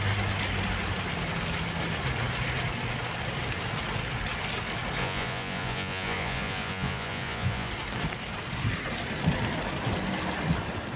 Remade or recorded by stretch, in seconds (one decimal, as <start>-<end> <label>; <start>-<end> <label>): 0.0-5.0 recorded; 5.0-7.7 remade; 7.7-11.0 recorded